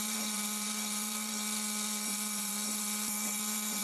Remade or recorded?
remade